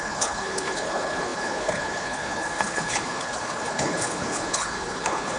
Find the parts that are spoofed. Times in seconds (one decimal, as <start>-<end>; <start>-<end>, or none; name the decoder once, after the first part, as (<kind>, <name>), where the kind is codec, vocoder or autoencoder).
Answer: 0.0-5.4 (codec, HILCodec)